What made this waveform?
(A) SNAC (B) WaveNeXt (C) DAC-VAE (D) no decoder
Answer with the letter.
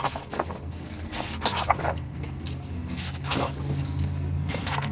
A